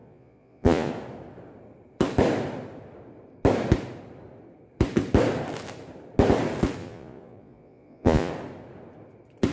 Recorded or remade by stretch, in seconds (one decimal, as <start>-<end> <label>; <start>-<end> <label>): 0.0-0.9 remade; 0.9-6.8 recorded; 6.8-8.3 remade; 8.3-9.5 recorded